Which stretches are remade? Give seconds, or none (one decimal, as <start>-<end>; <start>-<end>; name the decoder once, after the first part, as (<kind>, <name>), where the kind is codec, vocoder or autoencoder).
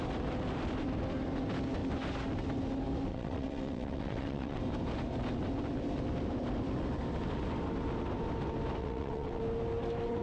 3.1-4.6 (vocoder, WaveNeXt); 8.8-9.4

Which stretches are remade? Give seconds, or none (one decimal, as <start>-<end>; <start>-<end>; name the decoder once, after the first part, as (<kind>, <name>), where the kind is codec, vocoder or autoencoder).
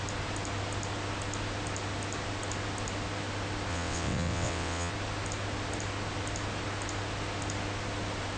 3.7-4.9 (vocoder, WaveNeXt)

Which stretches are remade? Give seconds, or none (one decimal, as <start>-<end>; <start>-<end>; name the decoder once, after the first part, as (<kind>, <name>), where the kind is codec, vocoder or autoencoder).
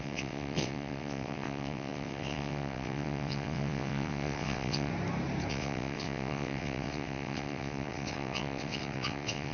0.0-4.9 (vocoder, WaveNeXt); 5.5-9.5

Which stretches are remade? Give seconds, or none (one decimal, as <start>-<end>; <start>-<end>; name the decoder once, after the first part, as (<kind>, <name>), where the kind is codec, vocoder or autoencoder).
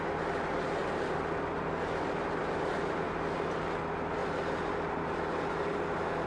none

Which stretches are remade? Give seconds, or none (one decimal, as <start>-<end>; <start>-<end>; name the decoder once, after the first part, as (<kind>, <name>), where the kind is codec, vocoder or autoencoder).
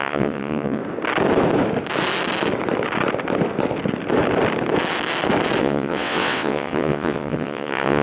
0.0-0.8 (vocoder, WaveNeXt); 5.6-8.0